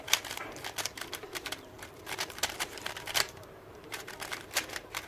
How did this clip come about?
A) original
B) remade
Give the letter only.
B